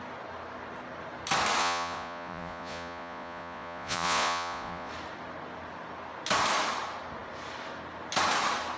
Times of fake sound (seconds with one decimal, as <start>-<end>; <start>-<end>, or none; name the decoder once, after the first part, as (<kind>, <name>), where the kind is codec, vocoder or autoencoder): 1.6-4.9 (vocoder, Vocos)